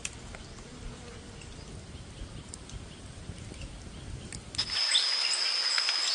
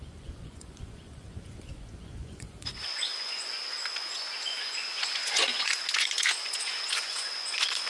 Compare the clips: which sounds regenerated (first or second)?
second